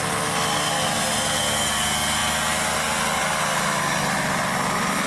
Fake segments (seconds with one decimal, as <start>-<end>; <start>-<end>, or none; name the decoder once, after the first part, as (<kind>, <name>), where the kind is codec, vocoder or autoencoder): none